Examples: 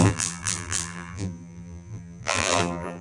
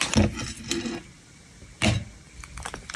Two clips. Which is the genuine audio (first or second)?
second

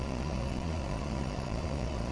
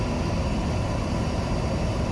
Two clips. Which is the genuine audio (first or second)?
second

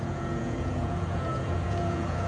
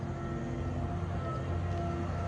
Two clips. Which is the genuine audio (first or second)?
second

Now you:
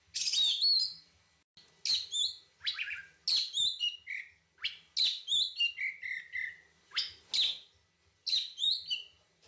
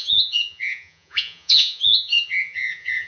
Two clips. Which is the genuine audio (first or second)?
first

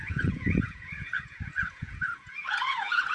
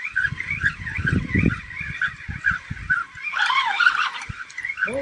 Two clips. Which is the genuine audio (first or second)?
second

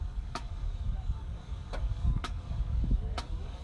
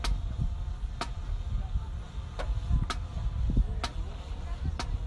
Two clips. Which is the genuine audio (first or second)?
second